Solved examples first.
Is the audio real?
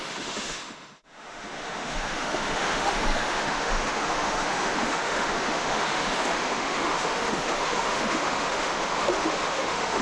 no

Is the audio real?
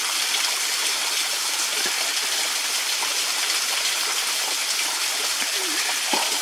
yes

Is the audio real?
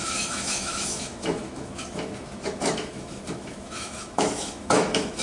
no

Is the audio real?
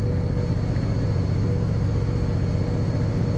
yes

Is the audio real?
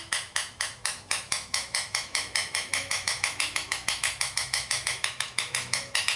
no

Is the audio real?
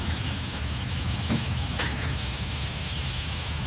no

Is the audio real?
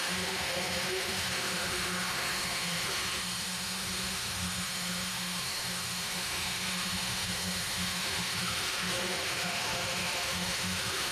no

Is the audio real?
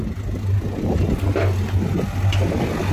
yes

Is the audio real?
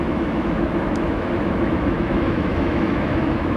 no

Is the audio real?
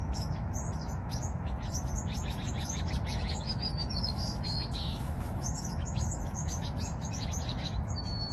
no